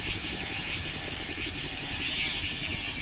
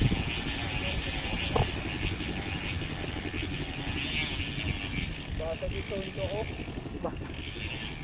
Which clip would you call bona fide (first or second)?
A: second